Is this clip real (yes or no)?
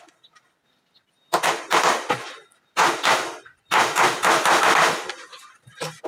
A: yes